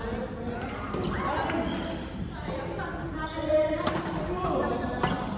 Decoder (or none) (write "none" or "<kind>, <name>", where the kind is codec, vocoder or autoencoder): none